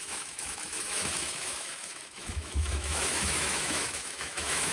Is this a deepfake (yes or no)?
yes